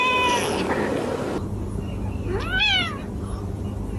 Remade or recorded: recorded